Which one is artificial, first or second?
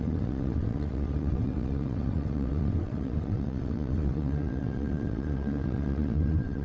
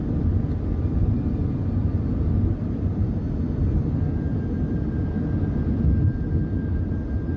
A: first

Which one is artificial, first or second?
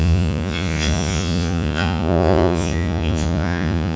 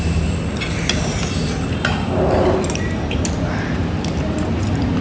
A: first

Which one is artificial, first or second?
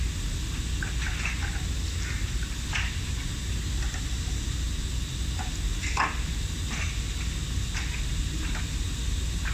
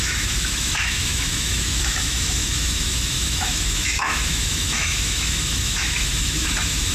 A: second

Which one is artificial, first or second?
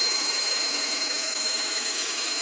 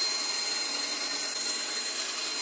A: first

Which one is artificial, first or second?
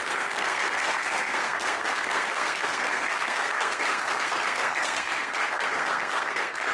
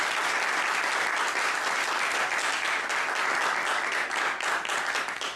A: first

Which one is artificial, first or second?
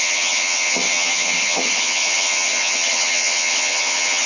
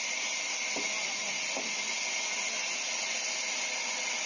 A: first